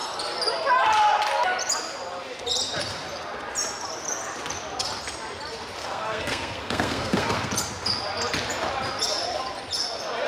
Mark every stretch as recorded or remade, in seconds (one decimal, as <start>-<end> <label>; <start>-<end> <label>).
0.0-5.8 recorded; 5.8-7.5 remade; 7.5-10.3 recorded